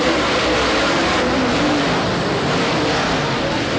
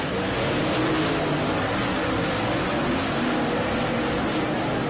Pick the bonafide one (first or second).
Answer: second